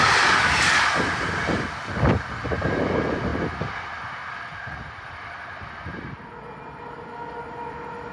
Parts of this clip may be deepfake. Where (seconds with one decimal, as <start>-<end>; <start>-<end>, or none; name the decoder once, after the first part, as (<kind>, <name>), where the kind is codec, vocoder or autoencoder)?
none